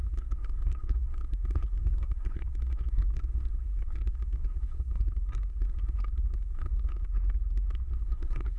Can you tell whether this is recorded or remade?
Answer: remade